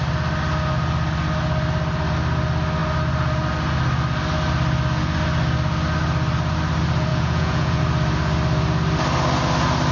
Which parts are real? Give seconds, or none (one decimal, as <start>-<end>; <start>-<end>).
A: 0.0-7.1; 7.8-9.9